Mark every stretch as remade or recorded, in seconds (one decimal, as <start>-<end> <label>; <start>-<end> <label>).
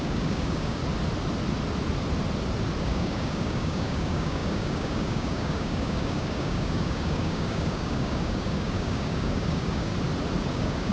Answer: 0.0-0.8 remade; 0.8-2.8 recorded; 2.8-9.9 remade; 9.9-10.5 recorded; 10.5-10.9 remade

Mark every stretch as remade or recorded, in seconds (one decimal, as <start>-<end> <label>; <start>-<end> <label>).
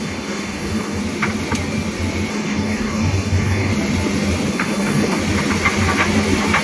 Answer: 0.0-1.0 remade; 1.0-2.3 recorded; 2.3-3.7 remade; 3.7-4.5 recorded; 4.5-5.2 remade; 5.2-6.6 recorded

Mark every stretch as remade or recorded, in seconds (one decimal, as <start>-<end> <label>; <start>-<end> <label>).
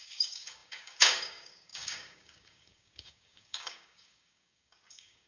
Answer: 0.0-5.3 remade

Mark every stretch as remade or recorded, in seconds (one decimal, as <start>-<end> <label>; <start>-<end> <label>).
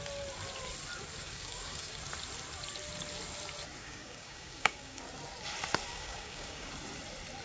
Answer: 0.0-1.2 recorded; 1.2-2.0 remade; 2.0-3.8 recorded; 3.8-5.0 remade; 5.0-5.9 recorded; 5.9-6.7 remade; 6.7-7.4 recorded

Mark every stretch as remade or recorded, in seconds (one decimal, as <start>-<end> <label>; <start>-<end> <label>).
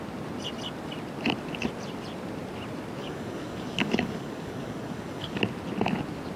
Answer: 0.0-3.0 recorded; 3.0-5.4 remade; 5.4-6.4 recorded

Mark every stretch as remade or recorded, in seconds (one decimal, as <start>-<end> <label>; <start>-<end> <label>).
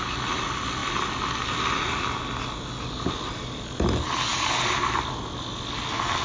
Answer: 0.0-6.2 recorded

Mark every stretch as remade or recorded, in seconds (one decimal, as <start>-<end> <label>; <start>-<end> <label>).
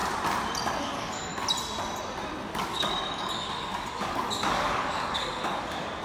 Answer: 0.0-0.8 recorded; 0.8-1.3 remade; 1.3-2.5 recorded; 2.5-6.0 remade